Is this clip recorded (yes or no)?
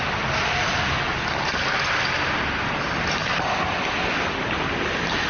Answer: yes